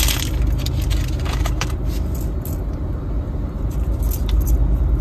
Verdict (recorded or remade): recorded